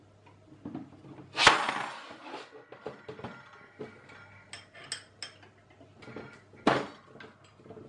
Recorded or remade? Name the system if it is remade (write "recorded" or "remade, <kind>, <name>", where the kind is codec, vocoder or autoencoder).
recorded